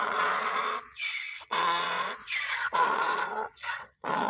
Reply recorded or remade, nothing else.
remade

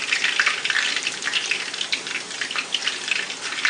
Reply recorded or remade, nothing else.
recorded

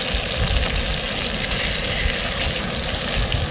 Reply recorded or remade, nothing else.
recorded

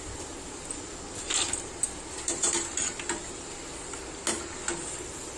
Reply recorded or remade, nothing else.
recorded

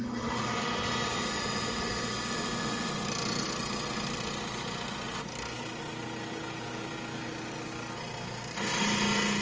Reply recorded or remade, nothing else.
recorded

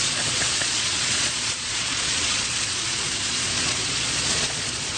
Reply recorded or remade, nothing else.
remade